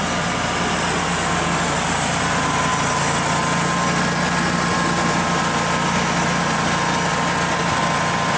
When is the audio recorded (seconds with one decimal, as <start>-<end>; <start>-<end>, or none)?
0.6-8.4